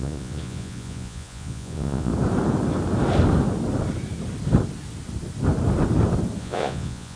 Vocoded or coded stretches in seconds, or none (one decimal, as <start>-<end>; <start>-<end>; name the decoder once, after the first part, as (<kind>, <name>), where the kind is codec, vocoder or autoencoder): 0.0-2.1 (vocoder, Vocos); 6.4-7.2